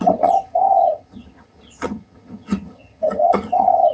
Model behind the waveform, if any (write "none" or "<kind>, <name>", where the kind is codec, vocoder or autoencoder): vocoder, HiFi-GAN